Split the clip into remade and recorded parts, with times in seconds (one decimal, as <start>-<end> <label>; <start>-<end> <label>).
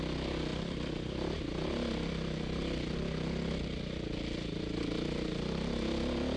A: 0.0-6.4 recorded